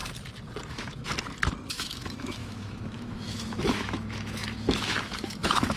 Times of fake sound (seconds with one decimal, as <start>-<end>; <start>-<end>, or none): 0.7-1.1; 1.7-5.8